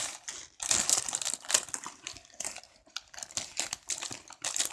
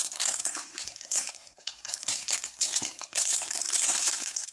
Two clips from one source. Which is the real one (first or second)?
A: first